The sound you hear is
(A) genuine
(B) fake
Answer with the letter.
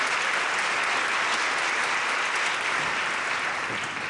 A